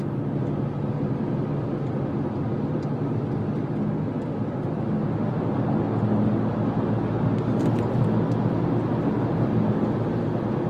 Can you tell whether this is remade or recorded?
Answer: recorded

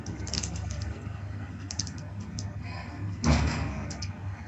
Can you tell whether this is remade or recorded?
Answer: remade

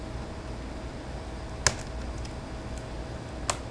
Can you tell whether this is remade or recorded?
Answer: recorded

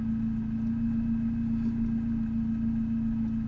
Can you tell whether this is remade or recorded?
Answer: recorded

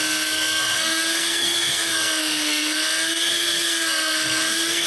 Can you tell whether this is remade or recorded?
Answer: remade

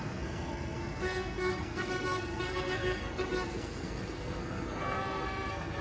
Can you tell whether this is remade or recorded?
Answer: remade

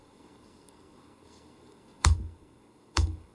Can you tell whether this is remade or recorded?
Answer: remade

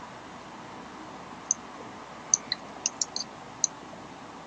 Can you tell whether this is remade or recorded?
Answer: recorded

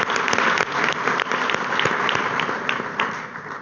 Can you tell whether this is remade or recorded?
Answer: recorded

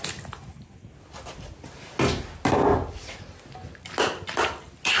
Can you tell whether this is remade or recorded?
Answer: recorded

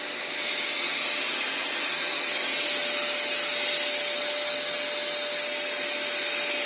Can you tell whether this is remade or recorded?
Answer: recorded